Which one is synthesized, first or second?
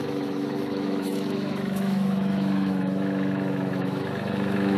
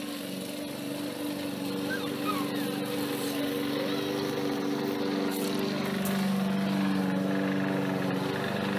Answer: first